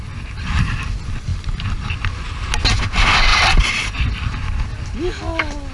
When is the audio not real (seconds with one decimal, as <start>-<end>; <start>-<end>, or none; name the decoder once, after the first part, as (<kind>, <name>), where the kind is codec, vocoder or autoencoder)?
3.3-4.0 (vocoder, BigVGAN v2)